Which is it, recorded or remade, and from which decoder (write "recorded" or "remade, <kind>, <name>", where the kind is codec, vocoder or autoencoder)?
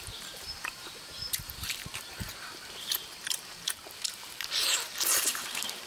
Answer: remade, vocoder, BigVGAN v2